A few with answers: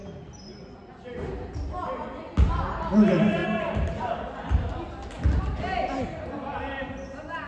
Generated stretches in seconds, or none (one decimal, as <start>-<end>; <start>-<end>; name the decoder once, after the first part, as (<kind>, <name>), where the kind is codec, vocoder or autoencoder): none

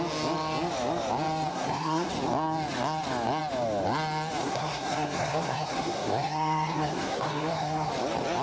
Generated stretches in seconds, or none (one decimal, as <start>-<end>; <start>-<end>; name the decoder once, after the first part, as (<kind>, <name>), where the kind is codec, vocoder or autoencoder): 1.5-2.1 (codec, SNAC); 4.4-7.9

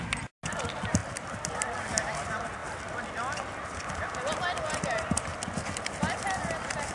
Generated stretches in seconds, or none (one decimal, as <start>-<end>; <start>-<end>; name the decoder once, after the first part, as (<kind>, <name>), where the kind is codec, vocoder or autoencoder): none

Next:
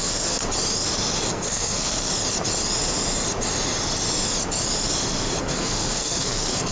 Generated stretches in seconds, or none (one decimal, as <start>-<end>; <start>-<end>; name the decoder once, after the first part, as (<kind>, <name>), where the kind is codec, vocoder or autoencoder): 0.0-0.4 (codec, SNAC); 1.3-2.1; 5.4-6.7

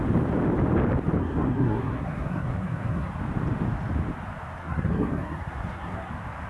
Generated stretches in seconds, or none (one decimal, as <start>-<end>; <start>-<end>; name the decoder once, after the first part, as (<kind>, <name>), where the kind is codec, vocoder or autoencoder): 1.2-3.1 (codec, SNAC); 4.6-6.1